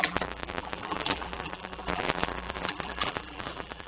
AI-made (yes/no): yes